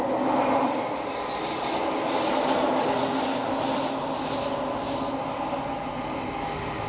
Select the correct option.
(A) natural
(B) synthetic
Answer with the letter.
A